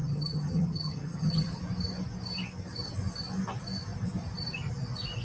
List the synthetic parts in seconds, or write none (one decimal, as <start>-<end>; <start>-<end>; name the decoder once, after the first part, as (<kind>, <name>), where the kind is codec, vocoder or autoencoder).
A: 0.0-1.6 (vocoder, HiFi-GAN)